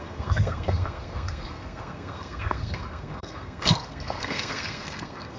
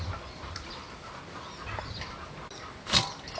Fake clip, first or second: first